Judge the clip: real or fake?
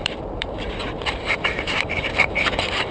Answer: fake